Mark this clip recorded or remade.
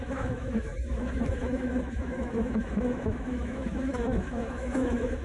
remade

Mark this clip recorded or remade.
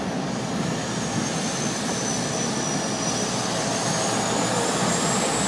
recorded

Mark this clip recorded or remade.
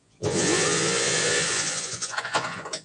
remade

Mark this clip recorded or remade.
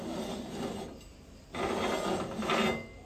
recorded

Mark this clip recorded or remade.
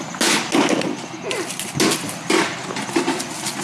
recorded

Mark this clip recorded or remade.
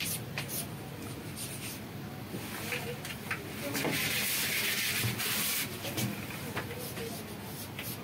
recorded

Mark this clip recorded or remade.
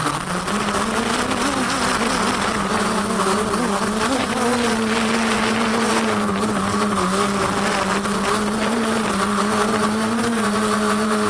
recorded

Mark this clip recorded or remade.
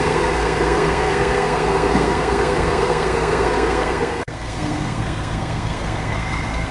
remade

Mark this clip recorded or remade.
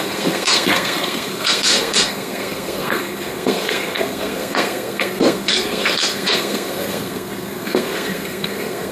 remade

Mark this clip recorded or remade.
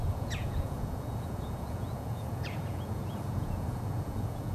remade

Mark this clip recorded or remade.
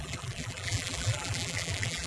remade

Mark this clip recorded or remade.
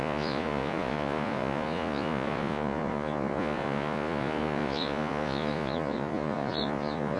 remade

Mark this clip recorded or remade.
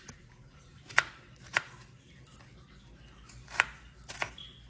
recorded